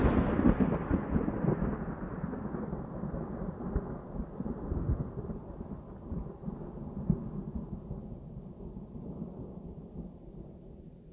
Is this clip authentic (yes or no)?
yes